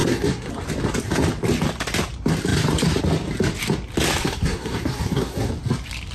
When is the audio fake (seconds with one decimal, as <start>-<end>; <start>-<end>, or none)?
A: 0.0-0.5; 4.2-5.5